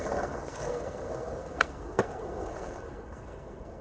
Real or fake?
fake